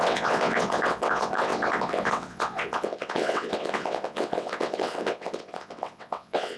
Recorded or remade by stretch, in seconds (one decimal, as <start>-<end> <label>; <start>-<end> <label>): 0.0-6.6 remade